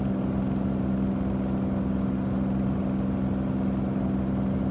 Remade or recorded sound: recorded